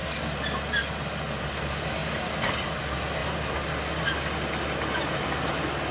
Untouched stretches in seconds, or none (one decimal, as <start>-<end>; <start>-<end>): 0.0-5.9